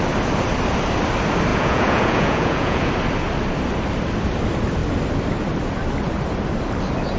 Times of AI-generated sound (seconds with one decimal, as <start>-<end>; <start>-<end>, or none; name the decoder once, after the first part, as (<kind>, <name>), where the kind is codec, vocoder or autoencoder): 1.5-2.9 (vocoder, Vocos)